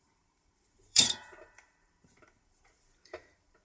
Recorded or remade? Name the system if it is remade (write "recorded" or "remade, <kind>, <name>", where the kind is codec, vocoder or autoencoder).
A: remade, vocoder, BigVGAN v2